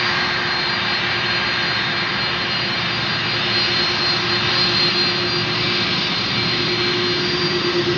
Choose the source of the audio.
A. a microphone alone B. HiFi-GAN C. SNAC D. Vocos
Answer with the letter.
A